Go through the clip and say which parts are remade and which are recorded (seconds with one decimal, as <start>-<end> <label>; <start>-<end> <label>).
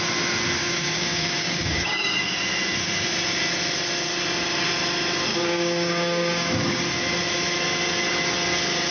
0.0-0.6 recorded; 0.6-2.2 remade; 2.2-5.3 recorded; 5.3-6.8 remade; 6.8-8.9 recorded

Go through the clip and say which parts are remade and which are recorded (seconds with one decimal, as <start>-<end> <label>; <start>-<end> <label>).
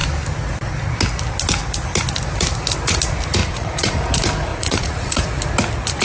0.0-3.4 recorded; 3.4-4.0 remade; 4.0-4.5 recorded; 4.5-5.2 remade; 5.2-6.0 recorded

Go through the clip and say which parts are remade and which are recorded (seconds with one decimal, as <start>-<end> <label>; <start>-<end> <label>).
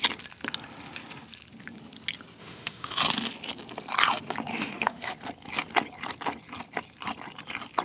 0.0-2.4 recorded; 2.4-3.0 remade; 3.0-4.5 recorded; 4.5-5.1 remade; 5.1-7.8 recorded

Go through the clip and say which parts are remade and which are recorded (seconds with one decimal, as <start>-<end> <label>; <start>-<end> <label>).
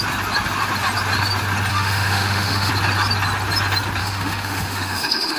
0.0-1.7 recorded; 1.7-2.7 remade; 2.7-4.0 recorded; 4.0-5.4 remade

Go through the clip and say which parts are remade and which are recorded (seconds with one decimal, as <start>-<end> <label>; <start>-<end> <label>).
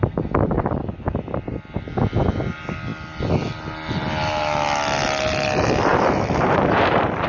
0.0-5.9 recorded; 5.9-7.3 remade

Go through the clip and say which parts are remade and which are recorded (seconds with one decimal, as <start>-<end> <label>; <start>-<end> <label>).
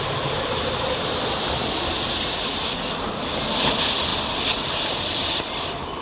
0.0-6.0 recorded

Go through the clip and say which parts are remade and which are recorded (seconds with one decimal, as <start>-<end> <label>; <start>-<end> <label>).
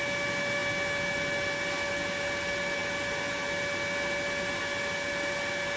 0.0-5.8 recorded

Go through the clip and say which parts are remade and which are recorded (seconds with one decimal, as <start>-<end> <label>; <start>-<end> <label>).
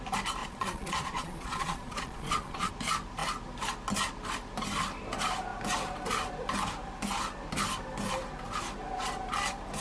0.0-0.4 recorded; 0.4-2.7 remade; 2.7-9.8 recorded